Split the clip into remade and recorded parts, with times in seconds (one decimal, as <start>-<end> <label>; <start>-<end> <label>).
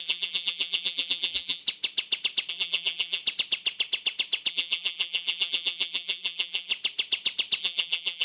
0.0-1.6 remade; 1.6-2.5 recorded; 2.5-3.2 remade; 3.2-4.5 recorded; 4.5-6.7 remade; 6.7-7.6 recorded; 7.6-8.2 remade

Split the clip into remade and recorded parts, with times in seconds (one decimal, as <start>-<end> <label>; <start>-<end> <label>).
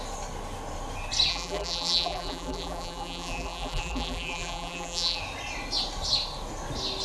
0.0-1.3 recorded; 1.3-5.2 remade; 5.2-7.0 recorded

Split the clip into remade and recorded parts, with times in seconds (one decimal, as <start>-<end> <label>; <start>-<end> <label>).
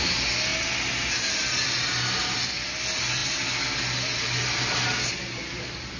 0.0-6.0 recorded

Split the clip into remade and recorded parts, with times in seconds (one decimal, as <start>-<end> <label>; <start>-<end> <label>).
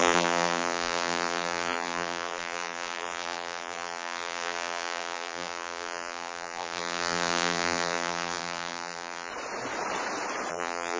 0.0-9.3 remade; 9.3-10.5 recorded; 10.5-11.0 remade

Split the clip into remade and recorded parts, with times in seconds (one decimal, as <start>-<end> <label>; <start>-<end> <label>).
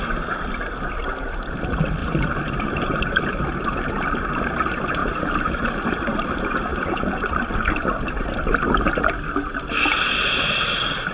0.0-2.0 recorded; 2.0-3.4 remade; 3.4-5.0 recorded; 5.0-5.9 remade; 5.9-6.7 recorded; 6.7-7.7 remade; 7.7-11.1 recorded